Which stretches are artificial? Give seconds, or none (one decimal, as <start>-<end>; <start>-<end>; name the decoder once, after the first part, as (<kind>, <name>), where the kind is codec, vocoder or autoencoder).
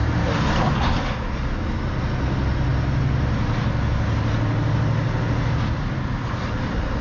none